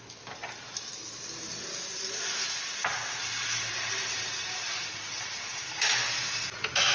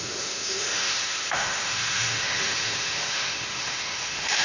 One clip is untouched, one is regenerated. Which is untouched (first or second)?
first